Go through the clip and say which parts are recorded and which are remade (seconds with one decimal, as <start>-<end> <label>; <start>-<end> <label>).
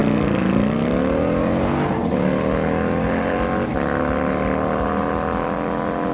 0.0-6.1 recorded